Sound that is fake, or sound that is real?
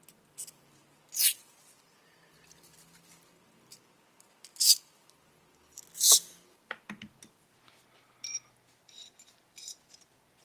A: real